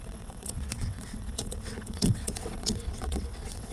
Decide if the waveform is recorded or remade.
remade